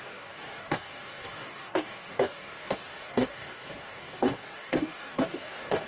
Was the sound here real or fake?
fake